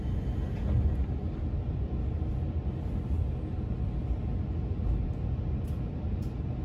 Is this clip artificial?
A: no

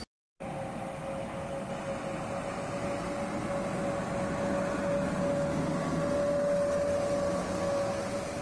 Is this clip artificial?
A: no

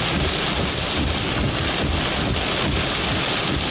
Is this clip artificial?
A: no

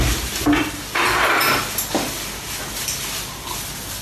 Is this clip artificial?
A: no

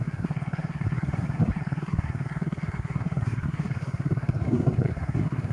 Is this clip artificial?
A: yes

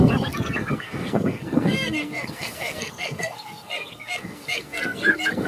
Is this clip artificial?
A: yes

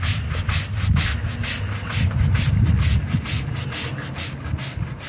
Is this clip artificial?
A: no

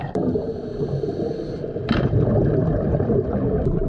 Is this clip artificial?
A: no